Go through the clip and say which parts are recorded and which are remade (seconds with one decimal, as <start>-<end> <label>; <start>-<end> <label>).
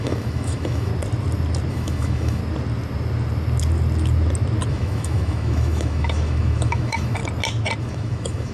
0.0-0.9 remade; 0.9-1.7 recorded; 1.7-2.4 remade; 2.4-4.7 recorded; 4.7-7.2 remade; 7.2-7.8 recorded; 7.8-8.5 remade